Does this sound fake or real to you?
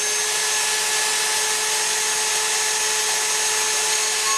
real